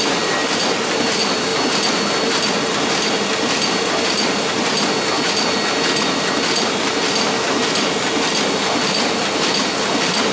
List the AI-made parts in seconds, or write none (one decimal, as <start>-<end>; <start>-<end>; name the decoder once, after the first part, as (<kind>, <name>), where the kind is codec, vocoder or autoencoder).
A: none